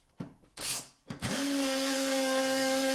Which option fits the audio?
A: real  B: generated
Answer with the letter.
B